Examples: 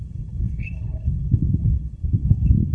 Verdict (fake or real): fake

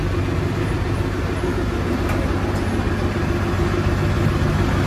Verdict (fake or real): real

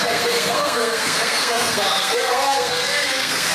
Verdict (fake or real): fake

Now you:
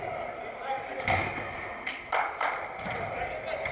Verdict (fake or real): real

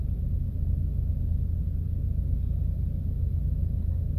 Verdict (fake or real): real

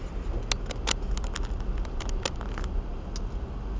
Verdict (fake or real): real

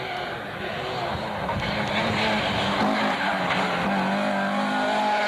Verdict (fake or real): real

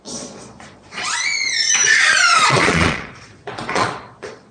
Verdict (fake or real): fake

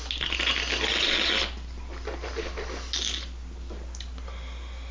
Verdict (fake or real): real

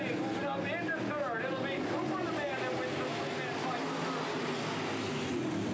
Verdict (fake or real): real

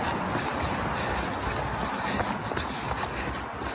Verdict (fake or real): real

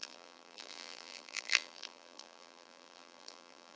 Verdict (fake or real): fake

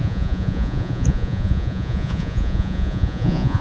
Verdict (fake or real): fake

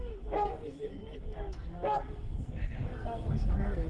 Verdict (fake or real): fake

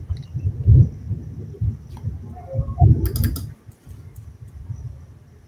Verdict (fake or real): real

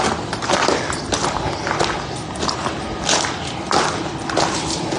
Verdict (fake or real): real